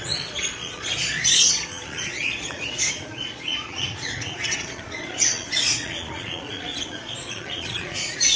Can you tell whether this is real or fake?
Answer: fake